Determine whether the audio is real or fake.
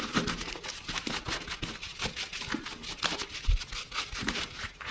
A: real